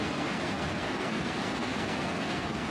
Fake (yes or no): yes